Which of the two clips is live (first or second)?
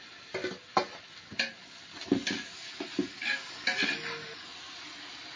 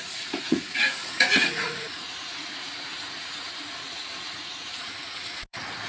first